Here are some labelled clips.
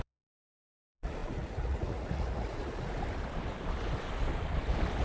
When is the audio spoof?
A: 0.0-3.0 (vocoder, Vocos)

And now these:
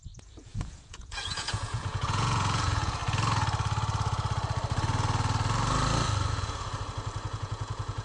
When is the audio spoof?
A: 0.0-3.0 (vocoder, Vocos); 6.3-6.7; 7.3-8.0

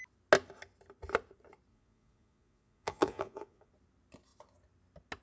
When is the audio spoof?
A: 1.7-3.7 (vocoder, Vocos)

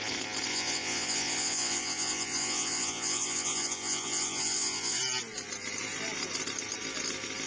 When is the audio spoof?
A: 0.5-5.0 (vocoder, Vocos)